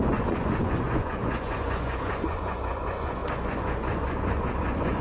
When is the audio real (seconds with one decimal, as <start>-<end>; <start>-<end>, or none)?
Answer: none